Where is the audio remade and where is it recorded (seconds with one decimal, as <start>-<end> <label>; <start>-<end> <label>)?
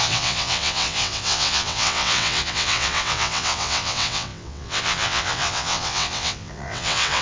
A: 0.0-7.2 remade